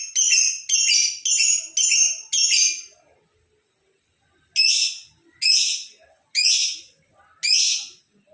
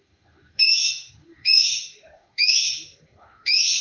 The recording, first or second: first